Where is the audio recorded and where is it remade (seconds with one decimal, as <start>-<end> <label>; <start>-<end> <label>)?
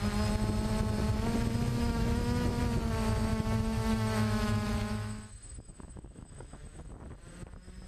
0.0-1.7 recorded; 1.7-2.6 remade; 2.6-3.3 recorded; 3.3-6.9 remade; 6.9-7.9 recorded